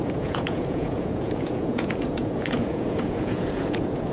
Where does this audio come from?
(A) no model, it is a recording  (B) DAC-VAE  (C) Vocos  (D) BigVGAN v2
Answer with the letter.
C